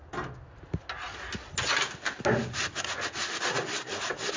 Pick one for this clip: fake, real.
real